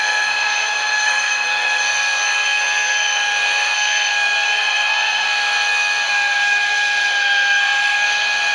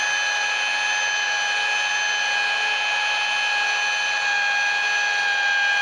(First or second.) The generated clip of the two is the first